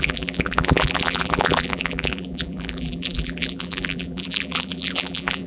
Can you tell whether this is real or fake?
fake